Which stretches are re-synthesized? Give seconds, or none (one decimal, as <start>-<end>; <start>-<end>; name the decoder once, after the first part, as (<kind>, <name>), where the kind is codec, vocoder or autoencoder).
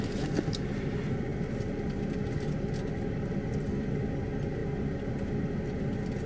none